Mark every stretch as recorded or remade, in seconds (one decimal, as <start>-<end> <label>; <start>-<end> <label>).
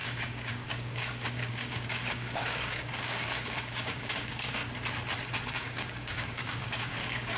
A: 0.0-4.6 remade; 4.6-5.5 recorded; 5.5-7.4 remade